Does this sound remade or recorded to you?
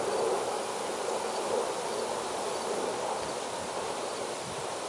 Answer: recorded